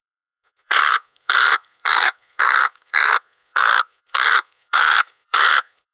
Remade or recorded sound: remade